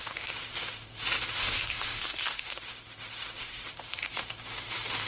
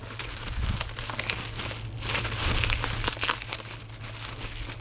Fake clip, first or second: first